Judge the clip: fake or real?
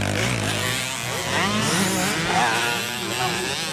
real